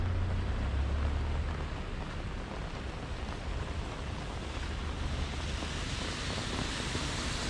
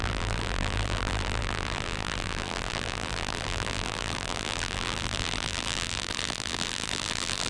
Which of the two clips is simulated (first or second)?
second